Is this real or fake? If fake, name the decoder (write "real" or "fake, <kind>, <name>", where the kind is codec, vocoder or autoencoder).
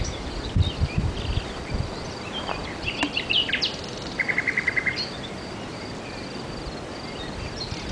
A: fake, vocoder, BigVGAN v2